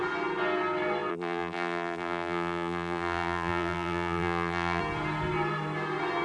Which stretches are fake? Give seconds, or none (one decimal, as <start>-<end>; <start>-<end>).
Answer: 1.1-4.8